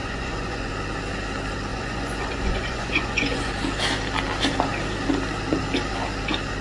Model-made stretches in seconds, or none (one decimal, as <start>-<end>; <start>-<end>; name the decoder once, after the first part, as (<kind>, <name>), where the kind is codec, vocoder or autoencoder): 0.0-0.7 (vocoder, Vocos); 1.7-3.5